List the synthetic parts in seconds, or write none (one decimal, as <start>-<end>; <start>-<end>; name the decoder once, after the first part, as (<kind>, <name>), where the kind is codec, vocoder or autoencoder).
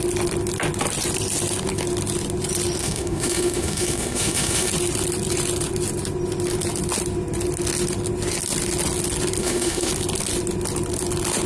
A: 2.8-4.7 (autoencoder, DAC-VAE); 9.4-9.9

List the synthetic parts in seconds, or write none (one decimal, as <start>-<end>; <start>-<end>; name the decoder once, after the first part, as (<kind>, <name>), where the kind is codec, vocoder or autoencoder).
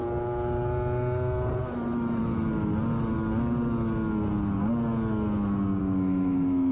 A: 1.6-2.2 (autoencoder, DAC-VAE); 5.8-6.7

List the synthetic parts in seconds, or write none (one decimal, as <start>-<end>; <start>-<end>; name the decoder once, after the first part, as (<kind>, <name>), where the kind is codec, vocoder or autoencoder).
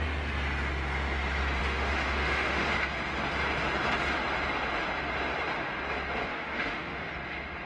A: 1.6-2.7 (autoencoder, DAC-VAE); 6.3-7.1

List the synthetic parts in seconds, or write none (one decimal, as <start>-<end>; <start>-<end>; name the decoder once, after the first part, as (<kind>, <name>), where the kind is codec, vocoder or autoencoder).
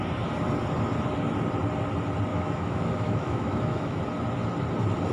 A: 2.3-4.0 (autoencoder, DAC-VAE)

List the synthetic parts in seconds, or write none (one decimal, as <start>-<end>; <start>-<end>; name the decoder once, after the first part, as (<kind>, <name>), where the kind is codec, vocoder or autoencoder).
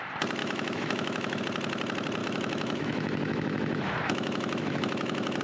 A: 0.4-1.4 (autoencoder, DAC-VAE); 2.2-5.4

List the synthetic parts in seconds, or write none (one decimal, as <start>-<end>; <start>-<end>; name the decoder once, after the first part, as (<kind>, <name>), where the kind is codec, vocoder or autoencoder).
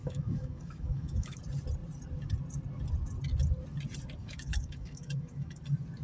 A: 0.0-1.4 (autoencoder, DAC-VAE); 4.2-5.6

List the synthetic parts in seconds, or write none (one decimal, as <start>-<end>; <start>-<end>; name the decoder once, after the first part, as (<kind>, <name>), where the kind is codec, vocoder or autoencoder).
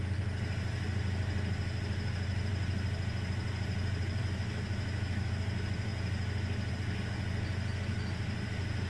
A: 4.2-5.3 (autoencoder, DAC-VAE)